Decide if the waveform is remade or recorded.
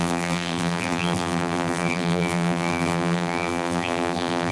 remade